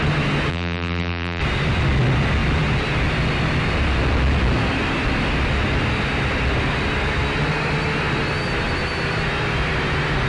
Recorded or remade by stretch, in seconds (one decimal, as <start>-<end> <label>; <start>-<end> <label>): 0.0-0.5 recorded; 0.5-1.4 remade; 1.4-10.3 recorded